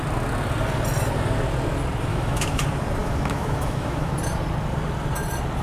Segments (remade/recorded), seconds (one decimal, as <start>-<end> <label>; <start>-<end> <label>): 0.0-2.1 recorded; 2.1-2.6 remade; 2.6-3.0 recorded; 3.0-4.1 remade; 4.1-5.6 recorded